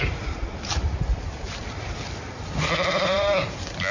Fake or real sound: fake